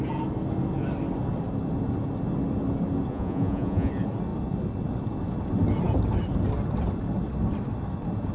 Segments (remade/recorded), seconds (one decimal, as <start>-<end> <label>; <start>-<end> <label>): 0.0-3.1 recorded; 3.1-3.9 remade; 3.9-8.3 recorded